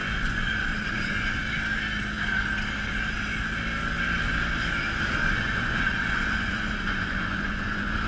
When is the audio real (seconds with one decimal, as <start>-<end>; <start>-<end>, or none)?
1.4-5.2